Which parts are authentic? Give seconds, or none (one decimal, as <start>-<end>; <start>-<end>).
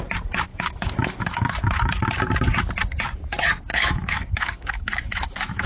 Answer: 0.0-0.5; 2.0-3.7